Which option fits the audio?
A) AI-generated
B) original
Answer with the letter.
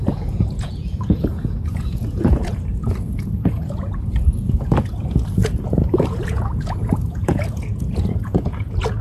A